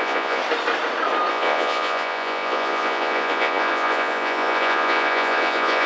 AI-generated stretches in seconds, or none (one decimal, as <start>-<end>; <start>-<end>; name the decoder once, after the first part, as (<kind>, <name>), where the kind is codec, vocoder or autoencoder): 0.0-0.4 (vocoder, Vocos); 1.3-5.9